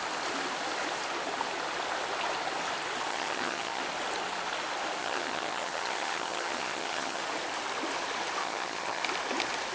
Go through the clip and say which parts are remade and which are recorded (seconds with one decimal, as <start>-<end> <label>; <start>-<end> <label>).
0.0-3.1 recorded; 3.1-3.8 remade; 3.8-5.0 recorded; 5.0-7.2 remade; 7.2-8.4 recorded; 8.4-9.0 remade; 9.0-9.7 recorded